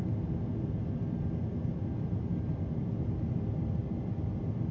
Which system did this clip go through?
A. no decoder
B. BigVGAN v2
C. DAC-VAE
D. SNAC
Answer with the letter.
A